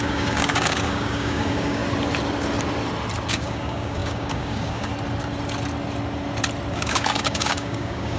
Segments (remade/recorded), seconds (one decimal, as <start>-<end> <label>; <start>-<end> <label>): 0.0-1.8 remade; 1.8-3.3 recorded; 3.3-4.9 remade; 4.9-6.7 recorded; 6.7-8.2 remade